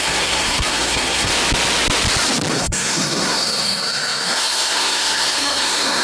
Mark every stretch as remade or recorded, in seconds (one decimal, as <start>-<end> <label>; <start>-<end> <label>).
0.0-1.3 remade; 1.3-2.5 recorded; 2.5-6.0 remade